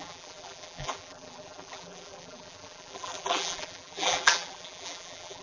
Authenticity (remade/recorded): remade